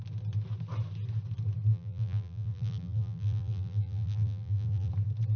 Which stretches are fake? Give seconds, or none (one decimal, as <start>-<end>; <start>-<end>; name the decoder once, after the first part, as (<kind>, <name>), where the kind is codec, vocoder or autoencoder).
1.7-4.9 (vocoder, BigVGAN v2)